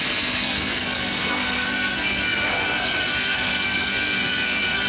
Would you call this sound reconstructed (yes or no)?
yes